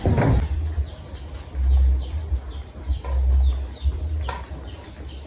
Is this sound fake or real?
real